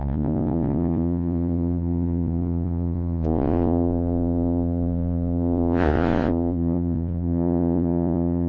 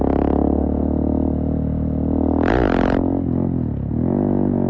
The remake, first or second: first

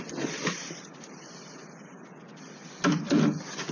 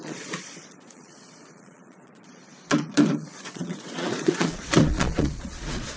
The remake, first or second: second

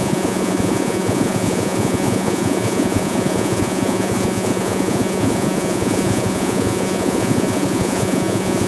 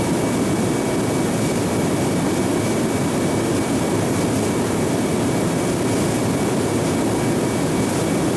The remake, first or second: first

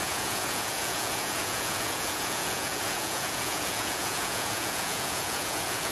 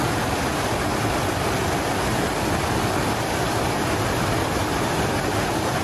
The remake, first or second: first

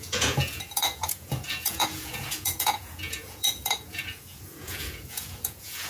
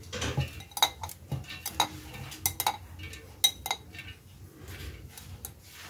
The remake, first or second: first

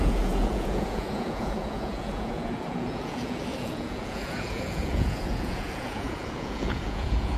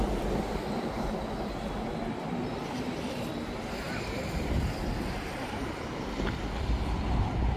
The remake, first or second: first